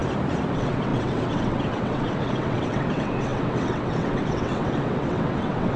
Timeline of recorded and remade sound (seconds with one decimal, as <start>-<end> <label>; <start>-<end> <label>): 0.0-0.5 recorded; 0.5-5.8 remade